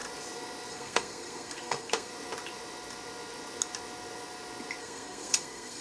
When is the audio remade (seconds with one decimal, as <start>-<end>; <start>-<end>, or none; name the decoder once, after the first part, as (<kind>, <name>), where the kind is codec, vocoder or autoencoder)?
0.7-2.1 (codec, SNAC); 4.8-5.8